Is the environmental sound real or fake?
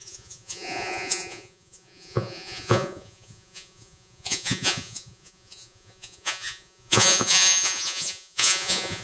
fake